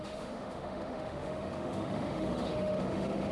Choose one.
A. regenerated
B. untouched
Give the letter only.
A